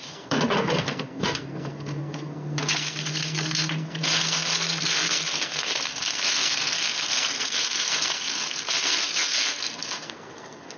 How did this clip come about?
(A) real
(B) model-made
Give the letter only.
B